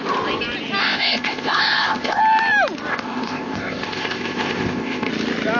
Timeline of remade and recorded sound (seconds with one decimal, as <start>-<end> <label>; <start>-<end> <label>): 0.0-0.8 recorded; 0.8-2.2 remade; 2.2-2.9 recorded; 2.9-5.1 remade; 5.1-5.6 recorded